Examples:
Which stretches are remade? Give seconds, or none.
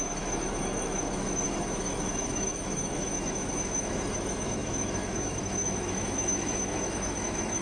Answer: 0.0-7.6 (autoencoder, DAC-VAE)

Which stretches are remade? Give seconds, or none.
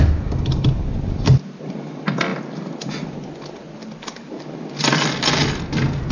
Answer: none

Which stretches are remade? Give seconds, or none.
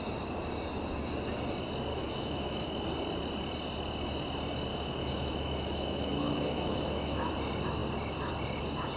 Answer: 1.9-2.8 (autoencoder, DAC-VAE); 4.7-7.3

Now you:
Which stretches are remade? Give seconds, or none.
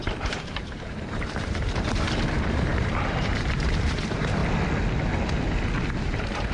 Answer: 0.0-4.4 (vocoder, BigVGAN v2); 5.9-6.5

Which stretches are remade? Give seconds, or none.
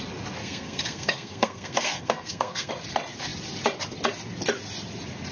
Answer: 0.4-2.7 (codec, SNAC)